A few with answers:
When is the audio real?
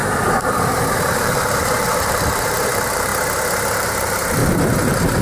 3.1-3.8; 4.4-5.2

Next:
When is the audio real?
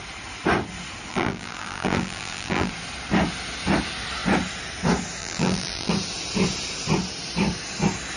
0.0-1.1; 2.7-5.2; 5.9-8.2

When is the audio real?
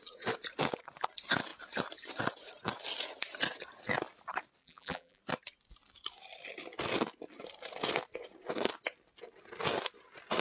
0.0-4.6; 5.2-10.4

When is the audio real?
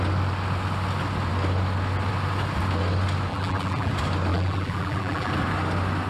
0.0-3.3; 3.9-4.3; 5.3-6.1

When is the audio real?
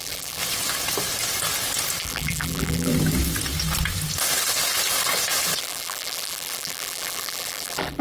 0.4-2.0; 2.9-5.6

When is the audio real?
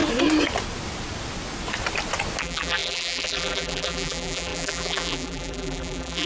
0.0-2.4